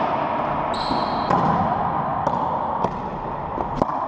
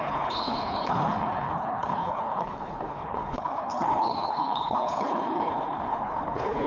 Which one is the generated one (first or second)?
second